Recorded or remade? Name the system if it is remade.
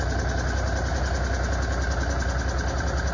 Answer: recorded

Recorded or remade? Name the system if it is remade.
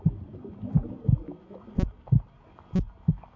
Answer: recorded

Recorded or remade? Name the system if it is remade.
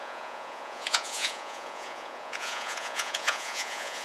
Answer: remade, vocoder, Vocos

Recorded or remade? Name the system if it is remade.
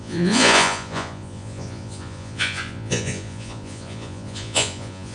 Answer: remade, vocoder, Vocos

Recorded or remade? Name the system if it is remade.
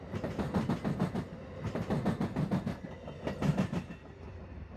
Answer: recorded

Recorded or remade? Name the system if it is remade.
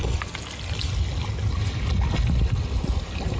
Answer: recorded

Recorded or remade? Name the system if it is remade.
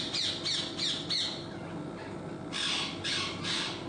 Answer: recorded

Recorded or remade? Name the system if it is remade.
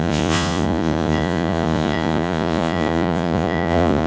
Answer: remade, vocoder, Vocos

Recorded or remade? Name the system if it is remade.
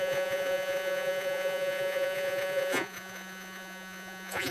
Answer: remade, vocoder, Vocos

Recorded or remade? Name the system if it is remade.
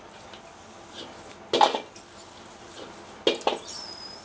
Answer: recorded